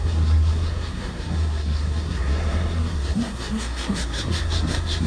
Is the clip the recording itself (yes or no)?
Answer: no